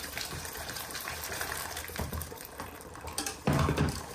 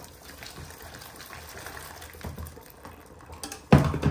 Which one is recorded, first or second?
second